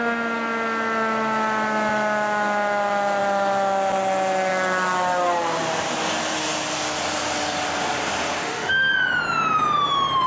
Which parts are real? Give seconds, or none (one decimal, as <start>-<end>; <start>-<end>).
0.0-8.4; 8.9-10.3